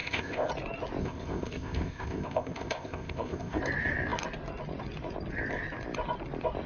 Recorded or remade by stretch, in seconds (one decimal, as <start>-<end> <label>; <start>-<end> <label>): 0.0-0.5 remade; 0.5-1.0 recorded; 1.0-3.6 remade; 3.6-6.7 recorded